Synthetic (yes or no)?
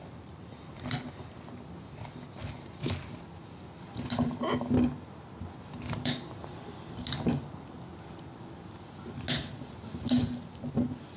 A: no